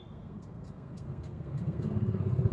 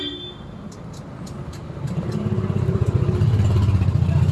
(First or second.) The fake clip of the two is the first